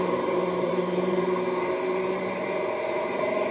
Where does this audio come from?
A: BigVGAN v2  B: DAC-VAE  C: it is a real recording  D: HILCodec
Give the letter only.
A